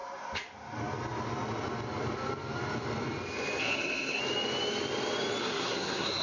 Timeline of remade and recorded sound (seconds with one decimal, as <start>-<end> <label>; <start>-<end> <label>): 0.0-3.6 recorded; 3.6-4.2 remade; 4.2-5.4 recorded; 5.4-6.2 remade